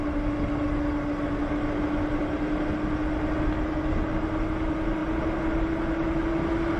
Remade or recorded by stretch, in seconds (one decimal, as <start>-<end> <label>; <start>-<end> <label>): 0.0-6.8 recorded

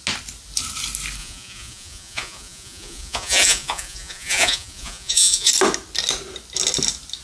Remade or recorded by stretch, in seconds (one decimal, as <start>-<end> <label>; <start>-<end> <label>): 0.0-1.2 recorded; 1.2-5.5 remade; 5.5-7.2 recorded

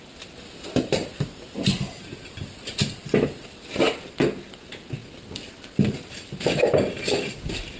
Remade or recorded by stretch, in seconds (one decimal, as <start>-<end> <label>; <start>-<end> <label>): 0.0-7.8 recorded